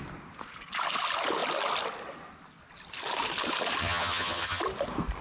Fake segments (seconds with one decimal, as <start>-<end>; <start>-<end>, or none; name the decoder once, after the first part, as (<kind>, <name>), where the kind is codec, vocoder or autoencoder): 3.8-4.6 (vocoder, HiFi-GAN)